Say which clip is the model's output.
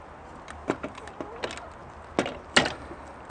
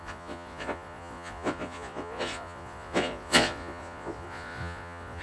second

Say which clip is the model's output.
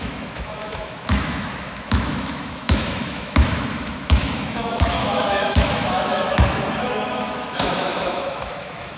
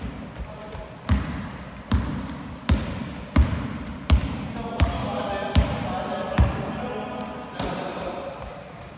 first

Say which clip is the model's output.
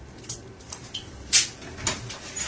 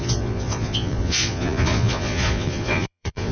second